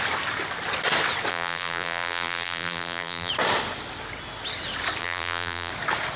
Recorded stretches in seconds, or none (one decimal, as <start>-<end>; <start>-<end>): 0.0-1.3; 3.3-5.0; 5.7-6.2